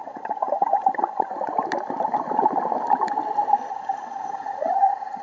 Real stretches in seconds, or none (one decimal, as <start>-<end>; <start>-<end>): 1.3-3.7